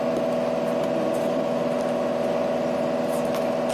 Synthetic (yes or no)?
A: no